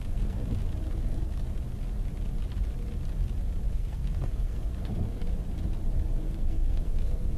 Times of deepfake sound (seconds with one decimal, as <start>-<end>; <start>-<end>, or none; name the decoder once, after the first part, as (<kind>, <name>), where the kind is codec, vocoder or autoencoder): 0.0-0.4 (codec, SNAC); 0.9-1.5; 3.7-5.2; 6.1-7.4